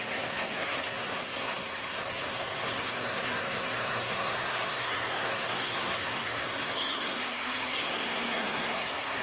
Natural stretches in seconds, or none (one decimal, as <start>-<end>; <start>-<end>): none